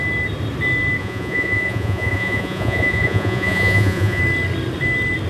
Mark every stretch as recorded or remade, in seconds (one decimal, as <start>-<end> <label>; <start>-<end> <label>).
0.0-1.0 recorded; 1.0-4.2 remade; 4.2-5.3 recorded